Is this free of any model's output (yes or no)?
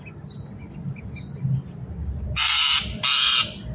yes